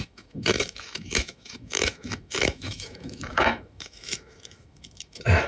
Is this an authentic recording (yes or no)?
no